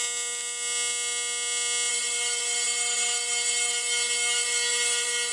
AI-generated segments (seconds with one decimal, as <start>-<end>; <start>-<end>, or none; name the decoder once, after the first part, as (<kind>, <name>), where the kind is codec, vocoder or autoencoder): 1.9-5.3 (autoencoder, DAC-VAE)